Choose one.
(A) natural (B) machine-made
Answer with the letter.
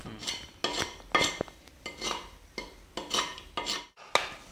A